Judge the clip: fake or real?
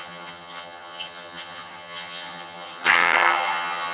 fake